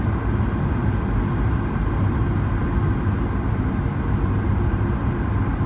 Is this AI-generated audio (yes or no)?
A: no